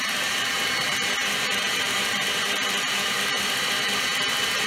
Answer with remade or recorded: remade